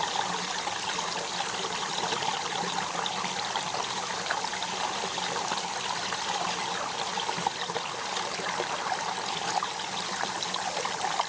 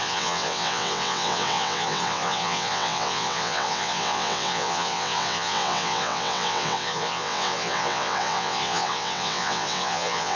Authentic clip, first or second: first